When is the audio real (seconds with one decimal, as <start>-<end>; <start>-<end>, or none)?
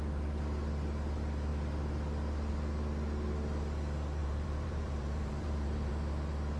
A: 0.0-4.2; 5.9-6.6